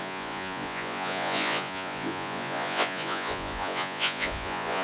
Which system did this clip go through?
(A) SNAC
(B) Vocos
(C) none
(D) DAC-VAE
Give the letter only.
B